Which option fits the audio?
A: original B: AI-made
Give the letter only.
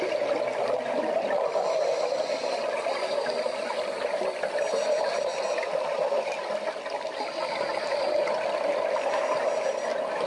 A